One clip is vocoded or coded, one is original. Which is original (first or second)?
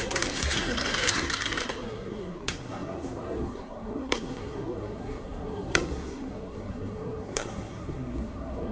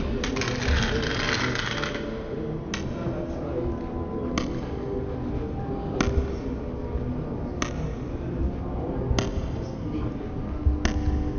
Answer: second